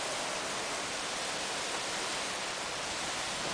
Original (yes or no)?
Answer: yes